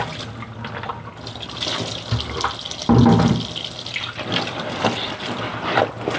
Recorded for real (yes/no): yes